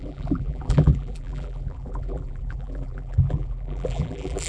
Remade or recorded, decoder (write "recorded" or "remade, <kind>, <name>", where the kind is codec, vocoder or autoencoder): remade, vocoder, BigVGAN v2